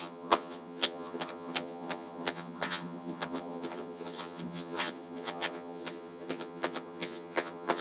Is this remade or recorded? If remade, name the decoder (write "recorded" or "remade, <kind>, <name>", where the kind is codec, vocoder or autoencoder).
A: remade, vocoder, HiFi-GAN